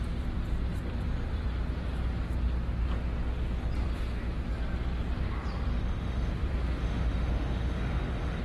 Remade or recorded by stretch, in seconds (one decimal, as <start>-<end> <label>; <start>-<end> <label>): 0.0-5.7 recorded; 5.7-6.3 remade; 6.3-6.8 recorded; 6.8-8.4 remade